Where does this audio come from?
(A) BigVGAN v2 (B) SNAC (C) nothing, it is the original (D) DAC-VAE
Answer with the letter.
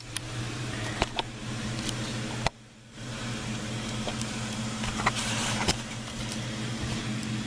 A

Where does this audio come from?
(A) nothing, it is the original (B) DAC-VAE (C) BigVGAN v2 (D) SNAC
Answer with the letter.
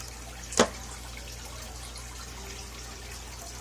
A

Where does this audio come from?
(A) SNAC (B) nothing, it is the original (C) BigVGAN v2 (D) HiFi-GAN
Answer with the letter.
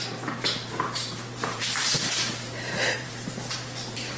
C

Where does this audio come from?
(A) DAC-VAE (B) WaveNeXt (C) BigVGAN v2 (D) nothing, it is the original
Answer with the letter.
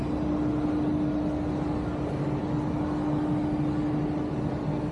D